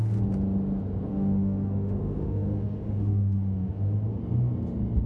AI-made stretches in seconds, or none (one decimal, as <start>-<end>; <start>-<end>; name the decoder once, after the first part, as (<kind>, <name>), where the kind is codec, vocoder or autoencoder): 1.1-4.2 (autoencoder, DAC-VAE)